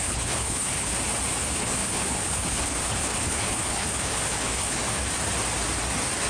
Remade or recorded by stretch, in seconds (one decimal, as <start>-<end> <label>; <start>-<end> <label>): 0.0-0.9 remade; 0.9-1.4 recorded; 1.4-5.0 remade; 5.0-6.3 recorded